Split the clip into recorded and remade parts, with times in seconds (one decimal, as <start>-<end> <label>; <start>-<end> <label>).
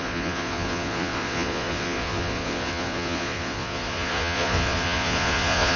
0.0-5.8 remade